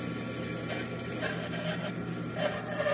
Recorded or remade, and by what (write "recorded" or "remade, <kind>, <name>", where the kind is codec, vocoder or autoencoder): recorded